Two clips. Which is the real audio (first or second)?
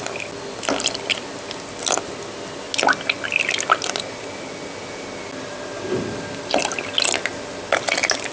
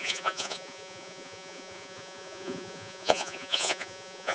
first